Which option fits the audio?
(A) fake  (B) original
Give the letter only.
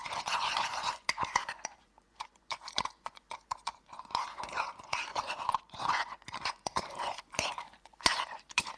A